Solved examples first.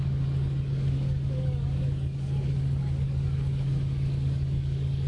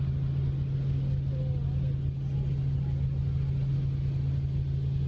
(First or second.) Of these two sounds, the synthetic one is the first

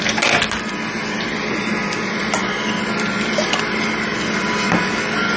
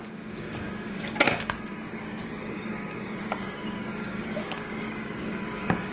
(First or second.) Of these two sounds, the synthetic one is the second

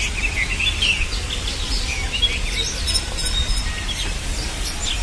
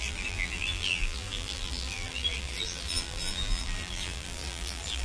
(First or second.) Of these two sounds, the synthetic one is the second